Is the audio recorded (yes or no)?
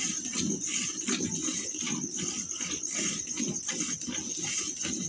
yes